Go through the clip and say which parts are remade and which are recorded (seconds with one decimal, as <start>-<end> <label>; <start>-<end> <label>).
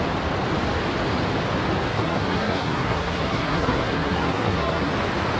0.0-1.9 recorded; 1.9-4.9 remade; 4.9-5.4 recorded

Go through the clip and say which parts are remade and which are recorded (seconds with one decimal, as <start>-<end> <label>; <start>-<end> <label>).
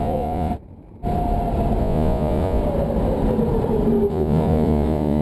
0.0-0.5 remade; 0.5-1.8 recorded; 1.8-2.6 remade; 2.6-4.1 recorded; 4.1-5.2 remade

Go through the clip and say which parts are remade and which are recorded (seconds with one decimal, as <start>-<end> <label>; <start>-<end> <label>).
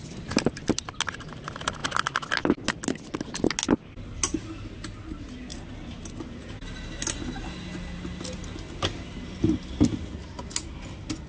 0.0-11.3 recorded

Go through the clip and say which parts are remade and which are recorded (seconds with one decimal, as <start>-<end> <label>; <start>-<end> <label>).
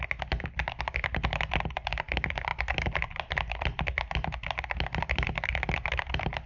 0.0-6.5 recorded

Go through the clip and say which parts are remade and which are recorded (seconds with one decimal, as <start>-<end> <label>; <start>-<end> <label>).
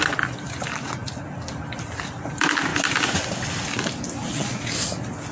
0.0-4.2 recorded; 4.2-4.7 remade; 4.7-5.3 recorded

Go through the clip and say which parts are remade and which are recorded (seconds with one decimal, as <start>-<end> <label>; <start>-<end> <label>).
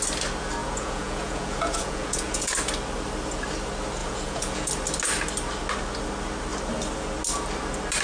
0.0-0.6 recorded; 0.6-2.5 remade; 2.5-4.0 recorded; 4.0-4.7 remade; 4.7-8.0 recorded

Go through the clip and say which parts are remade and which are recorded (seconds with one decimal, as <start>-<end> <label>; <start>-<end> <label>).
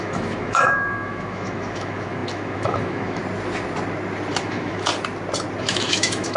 0.0-3.2 remade; 3.2-4.4 recorded; 4.4-4.9 remade; 4.9-5.6 recorded; 5.6-6.4 remade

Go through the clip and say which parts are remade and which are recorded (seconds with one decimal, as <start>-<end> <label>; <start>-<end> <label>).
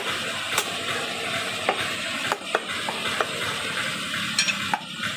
0.0-2.2 remade; 2.2-4.8 recorded; 4.8-5.2 remade